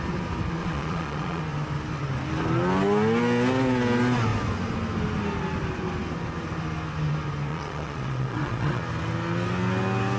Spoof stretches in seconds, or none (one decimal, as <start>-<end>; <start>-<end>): 0.6-1.4; 7.5-8.8